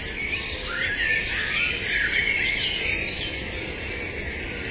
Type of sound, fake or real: real